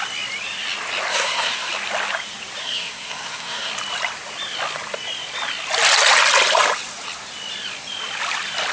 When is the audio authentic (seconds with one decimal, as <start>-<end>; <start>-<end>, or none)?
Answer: 0.0-1.1; 1.7-2.6; 3.7-8.7